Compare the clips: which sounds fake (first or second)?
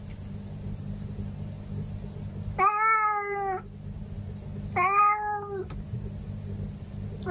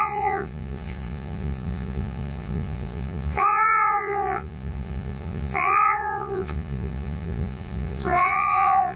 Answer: second